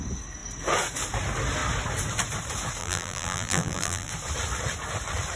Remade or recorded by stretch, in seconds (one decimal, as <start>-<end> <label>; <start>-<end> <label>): 0.0-2.8 recorded; 2.8-4.1 remade; 4.1-5.4 recorded